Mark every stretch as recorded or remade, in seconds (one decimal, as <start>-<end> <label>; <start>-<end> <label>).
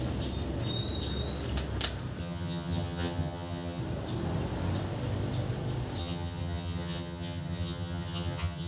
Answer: 0.0-2.2 recorded; 2.2-3.8 remade; 3.8-6.0 recorded; 6.0-8.7 remade